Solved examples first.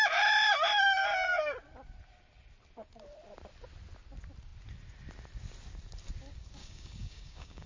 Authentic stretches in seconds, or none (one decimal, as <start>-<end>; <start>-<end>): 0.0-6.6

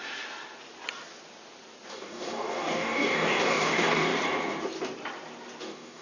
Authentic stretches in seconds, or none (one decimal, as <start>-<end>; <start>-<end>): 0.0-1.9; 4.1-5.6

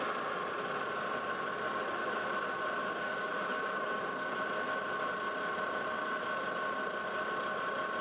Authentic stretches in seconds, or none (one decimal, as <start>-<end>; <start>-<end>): 0.0-2.8; 4.3-8.0